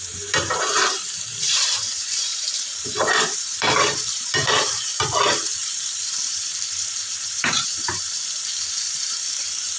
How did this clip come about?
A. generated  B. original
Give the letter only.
A